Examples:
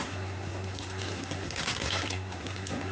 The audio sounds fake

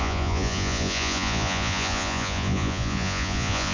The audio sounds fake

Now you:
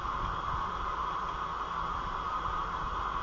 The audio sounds real